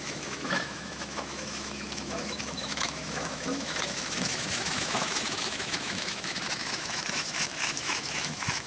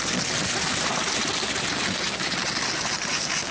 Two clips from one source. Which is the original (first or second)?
second